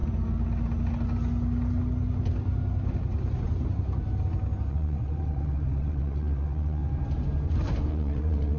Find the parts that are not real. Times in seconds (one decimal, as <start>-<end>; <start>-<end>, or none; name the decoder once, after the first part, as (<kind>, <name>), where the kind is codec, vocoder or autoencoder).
4.7-6.8 (vocoder, WaveNeXt); 7.9-8.6